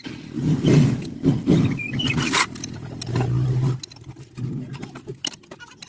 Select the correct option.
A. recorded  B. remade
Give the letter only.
A